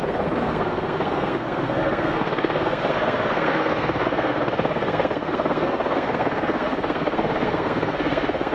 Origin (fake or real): fake